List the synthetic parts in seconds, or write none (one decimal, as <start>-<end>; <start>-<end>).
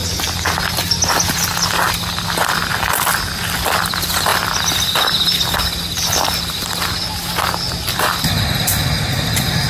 3.8-4.3; 8.4-9.7